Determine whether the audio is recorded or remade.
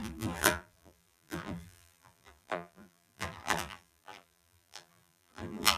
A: remade